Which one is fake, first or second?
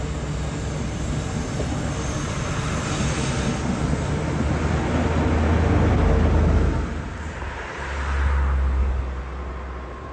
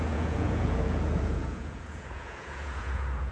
second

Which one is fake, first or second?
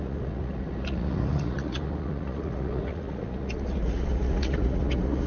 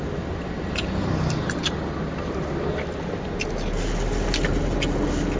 first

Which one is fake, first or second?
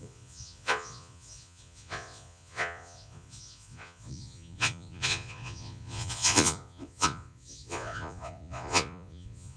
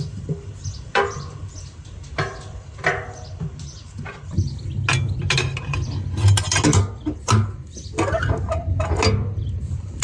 first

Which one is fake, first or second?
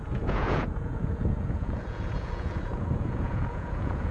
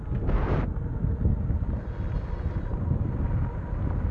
first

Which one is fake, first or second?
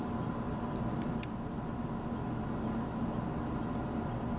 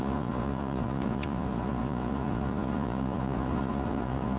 second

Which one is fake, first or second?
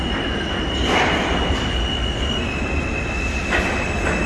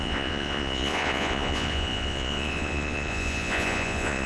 second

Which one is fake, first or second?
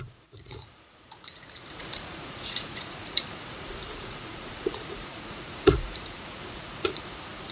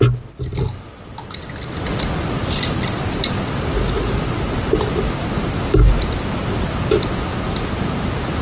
first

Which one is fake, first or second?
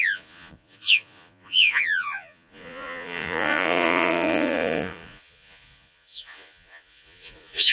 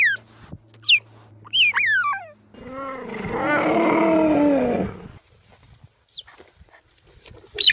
first